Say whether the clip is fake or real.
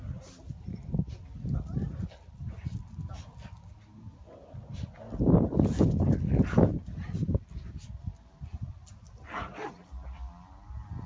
real